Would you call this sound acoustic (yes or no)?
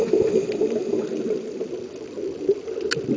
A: yes